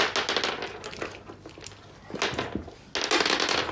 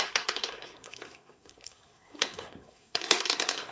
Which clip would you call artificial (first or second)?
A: second